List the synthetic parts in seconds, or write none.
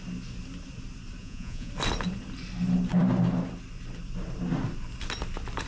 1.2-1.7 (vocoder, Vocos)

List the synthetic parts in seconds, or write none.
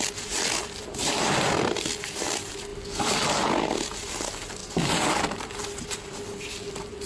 none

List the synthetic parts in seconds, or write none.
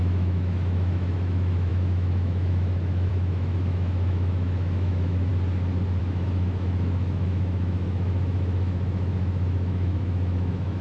0.0-5.3 (autoencoder, DAC-VAE); 6.0-10.8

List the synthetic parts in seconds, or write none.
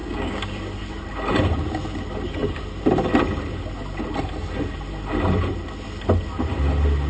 0.0-0.6 (codec, DAC)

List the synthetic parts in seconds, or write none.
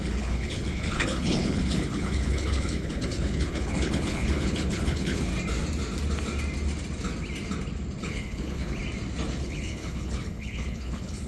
0.0-5.3 (codec, HILCodec); 8.0-8.8; 9.4-11.3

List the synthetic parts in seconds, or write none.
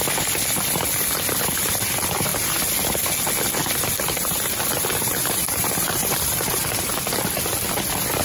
5.2-6.9 (vocoder, BigVGAN v2)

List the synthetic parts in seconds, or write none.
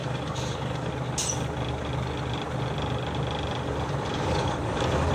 0.0-0.9 (codec, DAC); 4.1-5.1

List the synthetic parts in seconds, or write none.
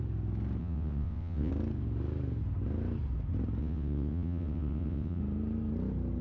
0.6-1.5 (vocoder, WaveNeXt); 3.6-5.2